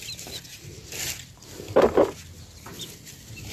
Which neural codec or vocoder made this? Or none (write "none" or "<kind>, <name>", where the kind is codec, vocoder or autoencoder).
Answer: none